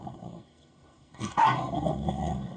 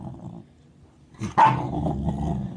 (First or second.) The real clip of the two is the second